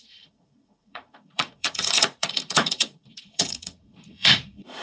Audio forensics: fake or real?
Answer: fake